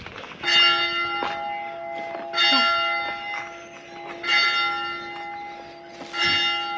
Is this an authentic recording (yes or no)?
yes